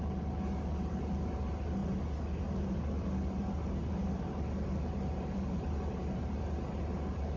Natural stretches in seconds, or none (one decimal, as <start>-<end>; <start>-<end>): 0.0-7.4